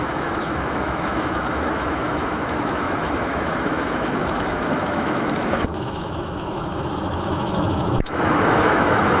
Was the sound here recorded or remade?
remade